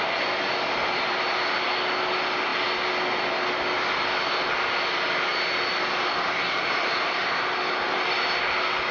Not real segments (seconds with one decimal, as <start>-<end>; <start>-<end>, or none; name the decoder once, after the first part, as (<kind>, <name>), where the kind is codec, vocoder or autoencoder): none